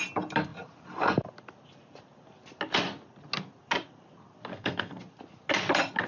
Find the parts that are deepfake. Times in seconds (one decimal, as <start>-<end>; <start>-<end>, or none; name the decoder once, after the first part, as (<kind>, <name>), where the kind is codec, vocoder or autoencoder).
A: 4.5-5.0 (codec, SNAC)